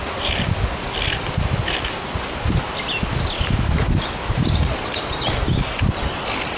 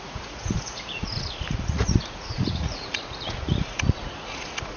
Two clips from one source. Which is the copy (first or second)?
second